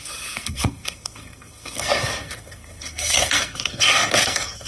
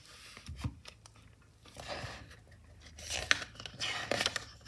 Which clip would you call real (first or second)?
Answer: second